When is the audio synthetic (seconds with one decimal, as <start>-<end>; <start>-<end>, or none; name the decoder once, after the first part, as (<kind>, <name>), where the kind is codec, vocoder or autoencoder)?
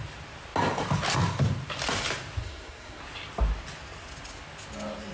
2.4-3.0 (codec, SNAC)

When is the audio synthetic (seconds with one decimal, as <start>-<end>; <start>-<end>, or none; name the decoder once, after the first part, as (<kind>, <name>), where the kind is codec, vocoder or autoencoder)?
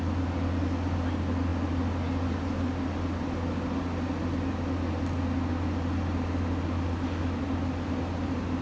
none